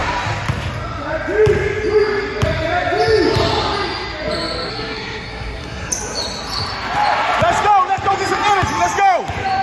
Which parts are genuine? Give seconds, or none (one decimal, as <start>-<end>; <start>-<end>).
0.0-4.7; 5.9-9.6